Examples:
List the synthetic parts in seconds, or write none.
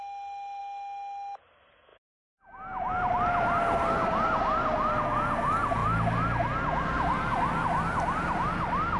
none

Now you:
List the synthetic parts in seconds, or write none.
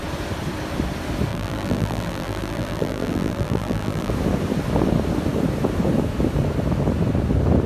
1.3-4.1 (vocoder, BigVGAN v2)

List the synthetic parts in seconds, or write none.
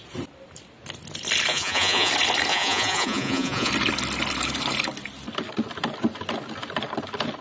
1.5-2.1 (vocoder, Vocos); 2.5-3.7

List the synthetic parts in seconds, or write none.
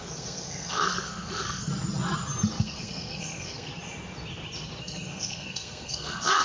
0.0-1.7 (codec, SNAC); 2.6-3.7; 4.8-6.4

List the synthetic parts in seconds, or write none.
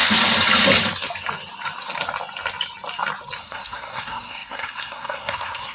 3.4-5.7 (codec, SNAC)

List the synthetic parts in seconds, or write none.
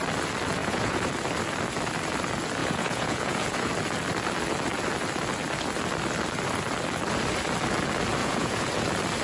0.6-1.1 (vocoder, Vocos); 2.6-3.7; 8.2-8.7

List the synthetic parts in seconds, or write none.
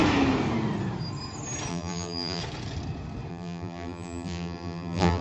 1.7-2.4 (vocoder, BigVGAN v2); 3.3-5.2